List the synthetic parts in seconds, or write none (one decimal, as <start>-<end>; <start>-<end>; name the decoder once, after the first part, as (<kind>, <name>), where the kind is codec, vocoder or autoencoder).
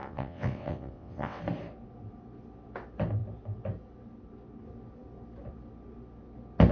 0.0-1.4 (vocoder, WaveNeXt)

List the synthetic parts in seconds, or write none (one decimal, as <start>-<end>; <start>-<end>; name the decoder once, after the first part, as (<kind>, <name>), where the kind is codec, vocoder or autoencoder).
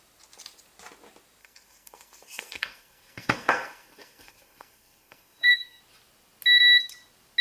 1.4-5.8 (codec, SNAC)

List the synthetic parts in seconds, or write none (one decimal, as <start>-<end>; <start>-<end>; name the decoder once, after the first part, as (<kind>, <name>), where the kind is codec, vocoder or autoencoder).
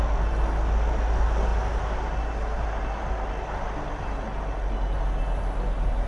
none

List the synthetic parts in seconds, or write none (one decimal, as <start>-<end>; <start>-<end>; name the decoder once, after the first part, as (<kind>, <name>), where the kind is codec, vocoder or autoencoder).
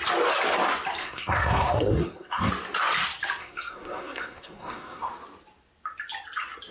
1.0-2.5 (codec, SNAC); 3.4-5.1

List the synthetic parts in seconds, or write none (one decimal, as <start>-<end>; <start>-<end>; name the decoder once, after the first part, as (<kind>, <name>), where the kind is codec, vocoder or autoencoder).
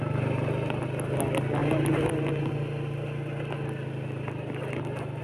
none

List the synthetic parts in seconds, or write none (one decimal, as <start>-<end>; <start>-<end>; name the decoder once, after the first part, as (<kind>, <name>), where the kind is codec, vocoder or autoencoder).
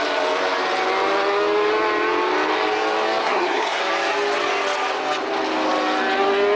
3.2-3.8 (codec, SNAC)